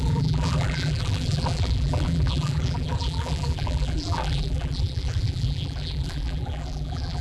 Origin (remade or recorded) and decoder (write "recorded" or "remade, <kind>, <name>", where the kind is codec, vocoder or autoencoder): remade, vocoder, BigVGAN v2